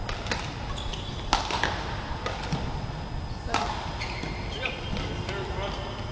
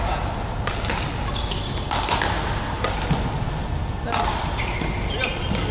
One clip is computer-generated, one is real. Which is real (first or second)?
second